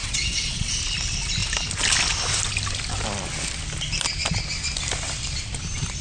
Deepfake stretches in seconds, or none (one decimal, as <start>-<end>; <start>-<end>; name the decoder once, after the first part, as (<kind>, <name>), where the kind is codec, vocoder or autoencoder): 0.0-0.8 (vocoder, WaveNeXt)